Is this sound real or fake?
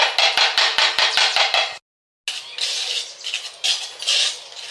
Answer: real